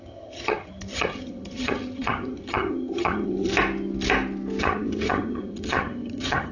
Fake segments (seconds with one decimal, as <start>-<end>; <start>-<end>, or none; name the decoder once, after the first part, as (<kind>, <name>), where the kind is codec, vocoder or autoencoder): 0.0-3.5 (vocoder, HiFi-GAN); 4.6-6.5